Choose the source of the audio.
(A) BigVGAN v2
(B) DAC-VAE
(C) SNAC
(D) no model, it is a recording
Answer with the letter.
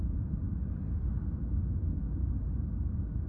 D